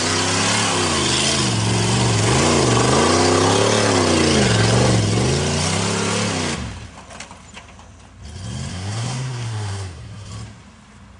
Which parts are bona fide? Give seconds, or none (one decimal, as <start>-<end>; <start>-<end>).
0.0-8.7; 10.3-11.2

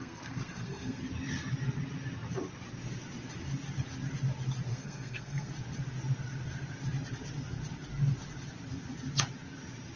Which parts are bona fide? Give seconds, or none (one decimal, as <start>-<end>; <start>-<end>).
1.0-4.7; 5.5-10.0

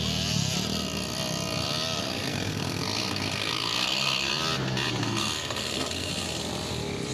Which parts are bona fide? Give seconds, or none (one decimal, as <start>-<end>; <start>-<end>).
0.0-2.0; 4.3-5.0; 6.1-7.1

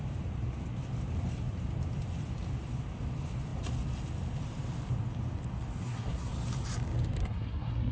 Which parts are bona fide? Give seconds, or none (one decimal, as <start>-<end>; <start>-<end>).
0.0-5.8; 6.3-7.2

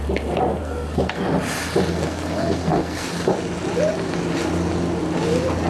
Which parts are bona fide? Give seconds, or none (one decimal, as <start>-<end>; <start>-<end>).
0.0-0.6; 1.2-1.9; 3.3-5.7

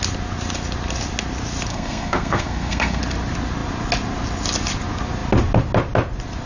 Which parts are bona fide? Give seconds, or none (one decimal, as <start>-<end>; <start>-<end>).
0.0-1.7; 3.0-6.5

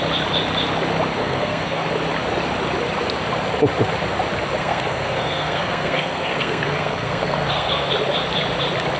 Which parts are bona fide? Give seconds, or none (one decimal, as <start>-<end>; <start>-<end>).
0.0-1.2; 1.9-4.6; 7.9-9.0

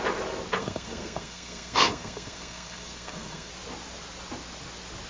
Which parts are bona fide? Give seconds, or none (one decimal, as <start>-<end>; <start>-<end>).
0.0-0.6; 3.5-5.1